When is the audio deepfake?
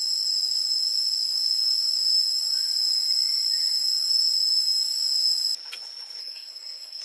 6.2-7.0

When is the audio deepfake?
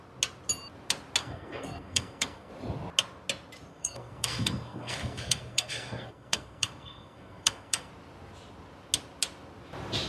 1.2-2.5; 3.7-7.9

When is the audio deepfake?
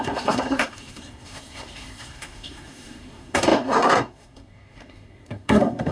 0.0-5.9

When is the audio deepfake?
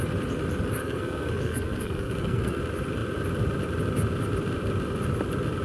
0.8-2.6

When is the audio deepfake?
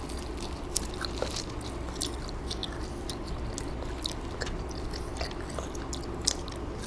none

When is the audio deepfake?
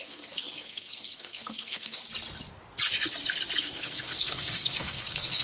0.0-2.0; 3.6-5.4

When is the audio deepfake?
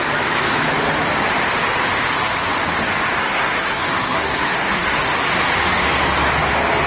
3.2-5.2